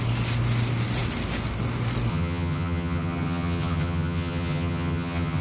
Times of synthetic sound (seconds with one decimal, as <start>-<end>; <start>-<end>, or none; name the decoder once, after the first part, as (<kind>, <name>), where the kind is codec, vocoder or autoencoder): 2.1-5.4 (vocoder, HiFi-GAN)